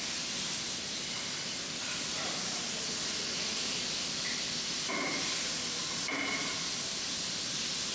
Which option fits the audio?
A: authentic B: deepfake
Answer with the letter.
A